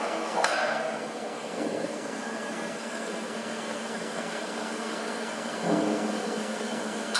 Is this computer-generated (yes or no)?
yes